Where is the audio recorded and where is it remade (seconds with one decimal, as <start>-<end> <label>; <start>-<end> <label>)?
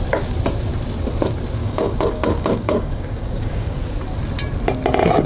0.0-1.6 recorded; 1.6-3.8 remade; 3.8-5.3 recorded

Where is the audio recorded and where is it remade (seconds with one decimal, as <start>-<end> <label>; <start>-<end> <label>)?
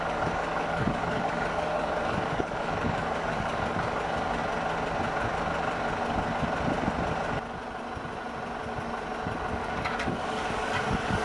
0.0-4.4 remade; 4.4-9.5 recorded; 9.5-11.2 remade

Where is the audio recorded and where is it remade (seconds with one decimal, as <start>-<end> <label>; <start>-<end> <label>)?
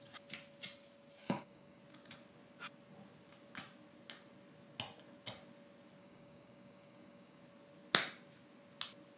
0.0-1.2 recorded; 1.2-1.8 remade; 1.8-6.0 recorded; 6.0-7.4 remade; 7.4-9.2 recorded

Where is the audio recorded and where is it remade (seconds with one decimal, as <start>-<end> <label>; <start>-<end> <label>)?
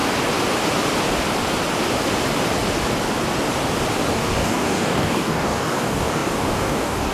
0.0-4.1 recorded; 4.1-7.1 remade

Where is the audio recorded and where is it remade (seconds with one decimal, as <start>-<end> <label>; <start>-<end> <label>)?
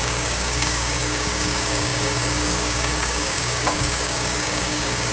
0.0-5.1 remade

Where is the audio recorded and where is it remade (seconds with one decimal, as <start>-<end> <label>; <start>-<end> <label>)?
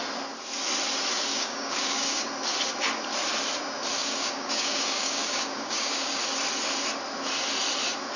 0.0-1.3 recorded; 1.3-2.3 remade; 2.3-4.0 recorded; 4.0-6.2 remade; 6.2-8.2 recorded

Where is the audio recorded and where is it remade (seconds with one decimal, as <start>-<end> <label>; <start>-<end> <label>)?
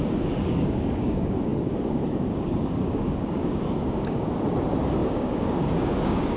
0.0-6.4 remade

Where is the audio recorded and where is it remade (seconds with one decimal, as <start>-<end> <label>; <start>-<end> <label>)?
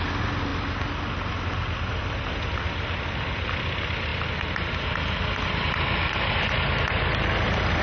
0.0-7.8 recorded